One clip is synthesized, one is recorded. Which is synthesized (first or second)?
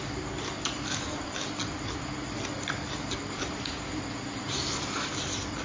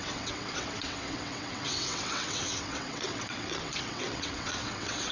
second